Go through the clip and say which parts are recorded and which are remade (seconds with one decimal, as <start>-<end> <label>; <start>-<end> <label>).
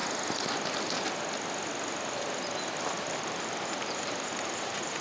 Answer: 0.0-3.0 recorded; 3.0-5.0 remade